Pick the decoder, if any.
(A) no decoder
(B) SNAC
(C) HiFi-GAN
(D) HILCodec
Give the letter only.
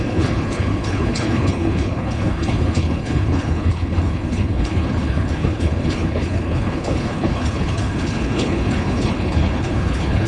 D